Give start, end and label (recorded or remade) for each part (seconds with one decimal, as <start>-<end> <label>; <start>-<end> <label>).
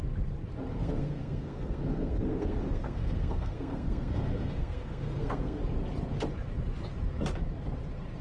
0.0-0.7 recorded; 0.7-5.6 remade; 5.6-8.2 recorded